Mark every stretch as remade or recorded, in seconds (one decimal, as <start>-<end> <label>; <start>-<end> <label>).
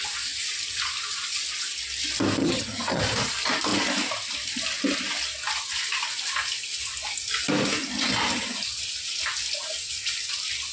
0.0-2.4 recorded; 2.4-3.0 remade; 3.0-10.7 recorded